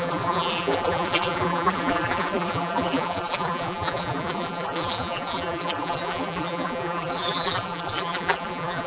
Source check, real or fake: fake